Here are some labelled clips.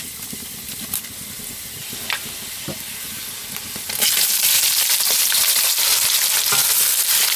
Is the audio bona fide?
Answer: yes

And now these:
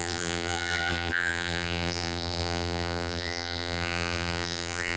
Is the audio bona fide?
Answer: no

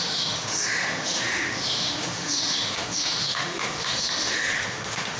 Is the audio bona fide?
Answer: no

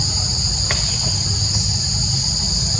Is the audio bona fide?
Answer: yes